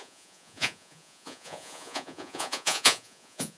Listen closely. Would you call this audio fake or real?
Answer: fake